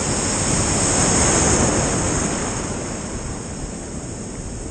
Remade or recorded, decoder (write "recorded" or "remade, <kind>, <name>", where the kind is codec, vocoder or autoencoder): recorded